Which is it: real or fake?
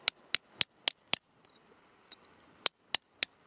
real